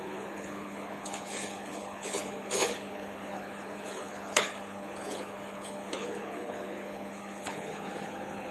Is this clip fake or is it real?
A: fake